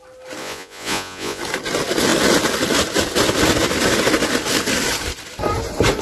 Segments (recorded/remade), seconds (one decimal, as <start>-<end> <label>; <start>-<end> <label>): 0.0-0.4 recorded; 0.4-1.4 remade; 1.4-6.0 recorded